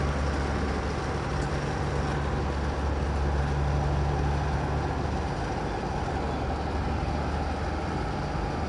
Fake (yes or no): no